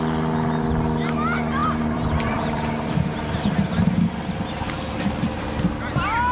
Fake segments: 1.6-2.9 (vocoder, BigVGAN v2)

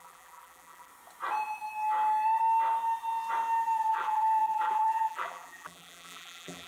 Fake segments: 0.0-0.9 (vocoder, BigVGAN v2); 3.9-6.7